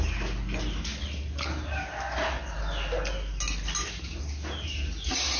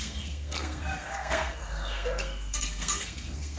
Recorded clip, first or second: first